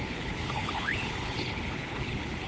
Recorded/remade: remade